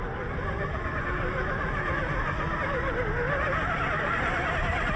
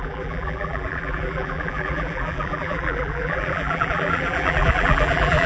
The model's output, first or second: second